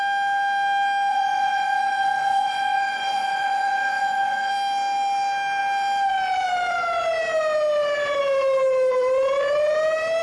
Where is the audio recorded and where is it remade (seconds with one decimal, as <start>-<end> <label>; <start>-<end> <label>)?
0.0-1.1 recorded; 1.1-4.5 remade; 4.5-10.2 recorded